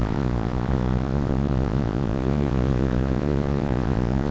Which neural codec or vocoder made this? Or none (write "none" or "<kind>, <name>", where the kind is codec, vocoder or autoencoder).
vocoder, Vocos